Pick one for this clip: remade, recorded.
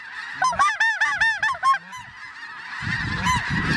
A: recorded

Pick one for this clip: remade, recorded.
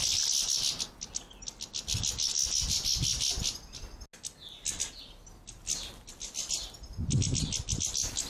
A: recorded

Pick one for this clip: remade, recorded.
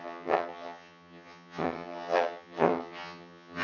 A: remade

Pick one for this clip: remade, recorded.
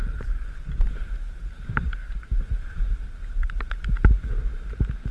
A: remade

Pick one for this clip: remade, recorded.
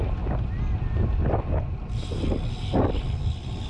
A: recorded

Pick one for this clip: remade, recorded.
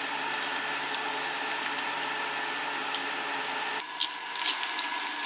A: recorded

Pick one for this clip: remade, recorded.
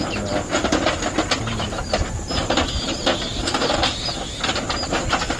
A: recorded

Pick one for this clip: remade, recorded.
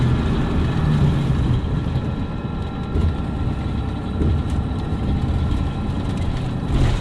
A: recorded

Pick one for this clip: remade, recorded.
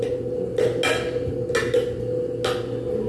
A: recorded